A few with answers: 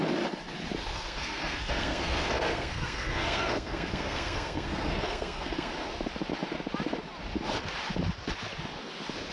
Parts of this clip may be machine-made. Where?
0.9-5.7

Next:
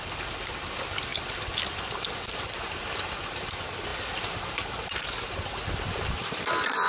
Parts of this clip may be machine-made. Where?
1.1-2.8

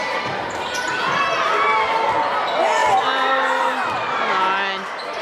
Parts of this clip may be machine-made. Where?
0.0-0.9

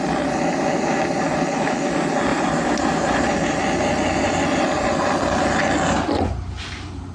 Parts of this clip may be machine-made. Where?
2.3-3.3

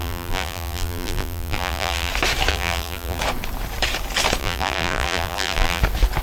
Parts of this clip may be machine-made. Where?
0.0-2.1; 2.5-3.2; 4.4-5.8

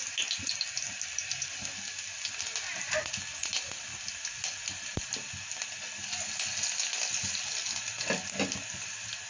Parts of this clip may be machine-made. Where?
none

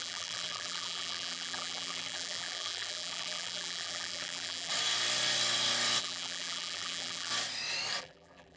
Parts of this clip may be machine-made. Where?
0.0-4.7; 6.0-7.3; 8.0-8.6

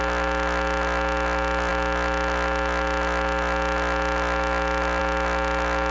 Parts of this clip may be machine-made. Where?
none